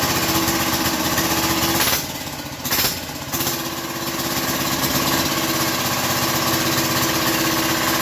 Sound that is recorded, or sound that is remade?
recorded